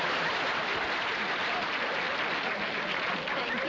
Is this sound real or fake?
real